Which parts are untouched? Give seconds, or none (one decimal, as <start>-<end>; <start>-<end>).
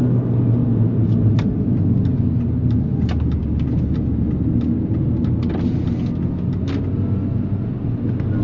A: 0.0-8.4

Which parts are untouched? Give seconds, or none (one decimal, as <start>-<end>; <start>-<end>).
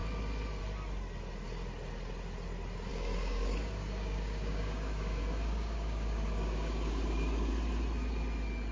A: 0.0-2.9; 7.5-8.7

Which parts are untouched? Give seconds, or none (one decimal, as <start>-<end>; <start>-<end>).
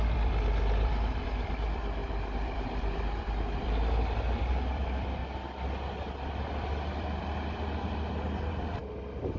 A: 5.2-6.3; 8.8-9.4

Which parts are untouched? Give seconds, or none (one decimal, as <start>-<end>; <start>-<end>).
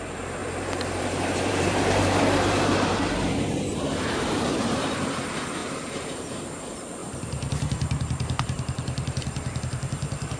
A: none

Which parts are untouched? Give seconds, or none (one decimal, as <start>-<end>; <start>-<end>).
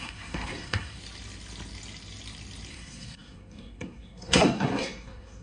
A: 1.0-2.7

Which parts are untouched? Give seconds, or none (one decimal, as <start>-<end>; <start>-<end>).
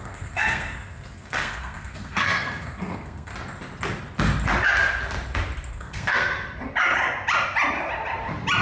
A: 3.3-5.7; 6.3-8.6